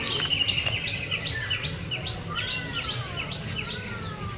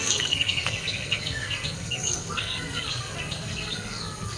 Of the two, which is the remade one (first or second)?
second